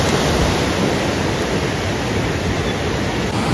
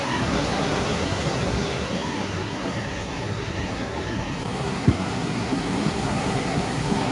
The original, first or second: first